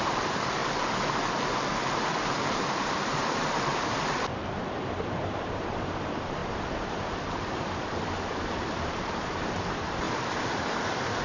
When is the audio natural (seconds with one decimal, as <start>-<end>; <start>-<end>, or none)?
0.6-2.2